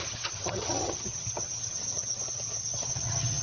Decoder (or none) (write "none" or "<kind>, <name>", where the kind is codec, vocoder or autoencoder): vocoder, HiFi-GAN